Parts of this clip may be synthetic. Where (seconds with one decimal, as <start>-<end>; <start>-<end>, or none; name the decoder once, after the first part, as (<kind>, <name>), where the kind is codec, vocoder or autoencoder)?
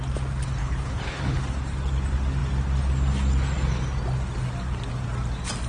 0.6-1.4 (codec, HILCodec)